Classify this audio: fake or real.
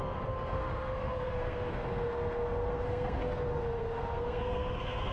fake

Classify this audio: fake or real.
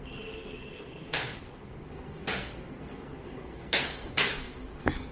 fake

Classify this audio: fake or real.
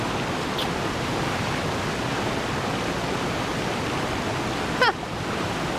real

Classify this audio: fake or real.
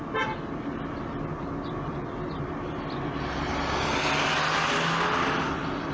real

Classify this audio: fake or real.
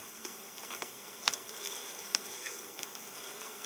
fake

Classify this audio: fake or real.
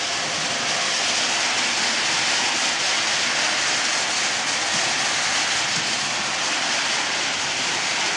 real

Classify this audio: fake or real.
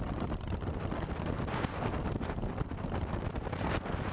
real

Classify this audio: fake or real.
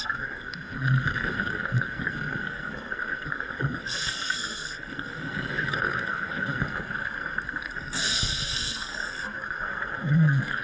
fake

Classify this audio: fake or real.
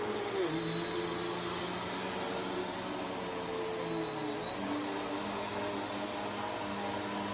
real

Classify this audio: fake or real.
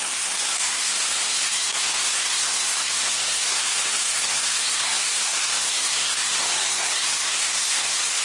fake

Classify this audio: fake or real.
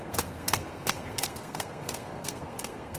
fake